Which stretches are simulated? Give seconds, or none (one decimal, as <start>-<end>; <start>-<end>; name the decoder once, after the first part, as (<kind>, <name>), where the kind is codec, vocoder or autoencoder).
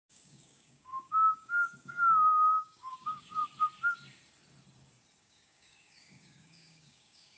0.0-3.4 (codec, DAC); 5.2-7.4